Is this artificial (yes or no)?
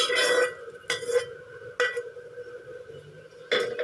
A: no